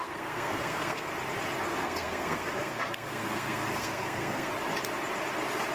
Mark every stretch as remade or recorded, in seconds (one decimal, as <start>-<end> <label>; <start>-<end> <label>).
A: 0.0-1.1 remade; 1.1-1.7 recorded; 1.7-4.5 remade; 4.5-5.7 recorded

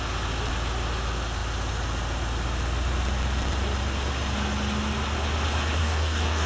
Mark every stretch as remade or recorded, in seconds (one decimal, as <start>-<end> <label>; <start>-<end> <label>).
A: 0.0-5.8 recorded; 5.8-6.5 remade

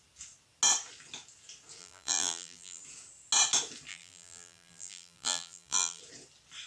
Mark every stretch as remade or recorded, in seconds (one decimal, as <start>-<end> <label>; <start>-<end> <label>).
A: 0.0-1.8 recorded; 1.8-2.8 remade; 2.8-3.9 recorded; 3.9-6.0 remade; 6.0-6.7 recorded

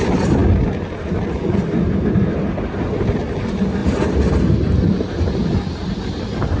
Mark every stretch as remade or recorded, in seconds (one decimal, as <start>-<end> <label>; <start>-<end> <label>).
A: 0.0-3.8 recorded; 3.8-4.3 remade; 4.3-6.6 recorded

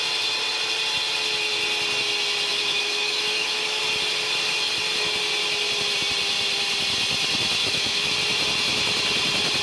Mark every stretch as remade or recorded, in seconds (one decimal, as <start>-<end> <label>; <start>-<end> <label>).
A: 0.0-2.5 recorded; 2.5-3.8 remade; 3.8-7.6 recorded; 7.6-8.1 remade; 8.1-9.6 recorded